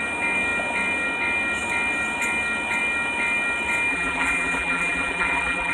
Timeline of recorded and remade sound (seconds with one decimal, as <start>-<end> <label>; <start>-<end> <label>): 0.0-3.9 recorded; 3.9-5.7 remade